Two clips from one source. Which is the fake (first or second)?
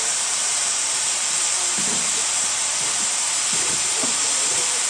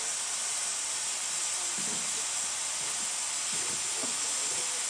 first